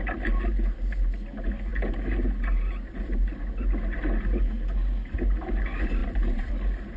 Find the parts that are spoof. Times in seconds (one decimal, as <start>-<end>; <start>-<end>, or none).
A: 6.0-6.5